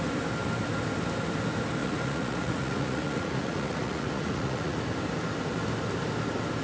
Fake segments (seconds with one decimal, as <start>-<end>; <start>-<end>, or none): 1.8-4.8